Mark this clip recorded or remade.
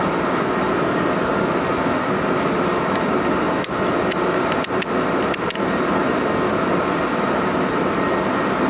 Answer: recorded